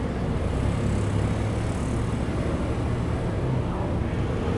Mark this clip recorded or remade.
recorded